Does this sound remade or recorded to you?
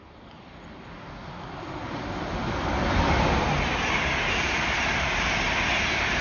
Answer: recorded